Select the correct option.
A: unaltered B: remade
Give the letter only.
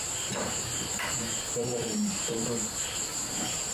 B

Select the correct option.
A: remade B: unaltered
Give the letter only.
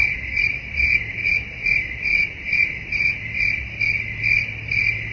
B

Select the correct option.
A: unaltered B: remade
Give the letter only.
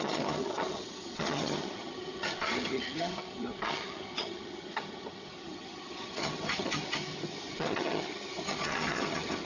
B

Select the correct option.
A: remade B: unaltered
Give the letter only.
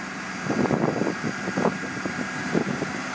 B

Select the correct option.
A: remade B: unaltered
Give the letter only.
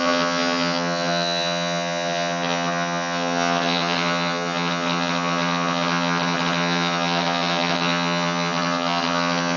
A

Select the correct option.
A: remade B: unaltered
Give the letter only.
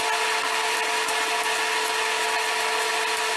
B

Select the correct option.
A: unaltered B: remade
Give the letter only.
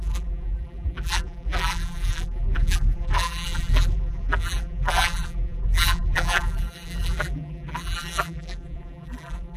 B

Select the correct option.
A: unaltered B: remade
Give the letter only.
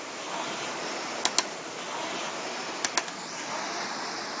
A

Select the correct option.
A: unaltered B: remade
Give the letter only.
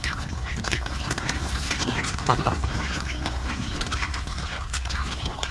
B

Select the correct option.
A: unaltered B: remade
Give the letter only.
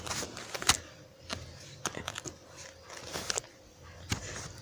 A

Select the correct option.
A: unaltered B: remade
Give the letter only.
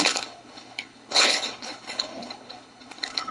B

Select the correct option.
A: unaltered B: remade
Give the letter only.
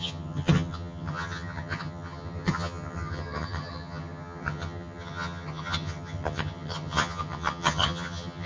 B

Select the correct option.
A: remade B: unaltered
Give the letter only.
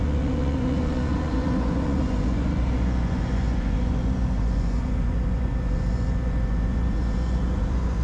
A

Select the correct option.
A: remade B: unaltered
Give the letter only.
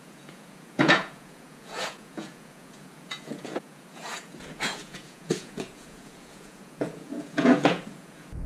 A